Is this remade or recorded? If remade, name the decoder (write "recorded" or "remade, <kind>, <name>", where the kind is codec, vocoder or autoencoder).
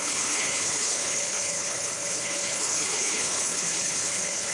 remade, codec, HILCodec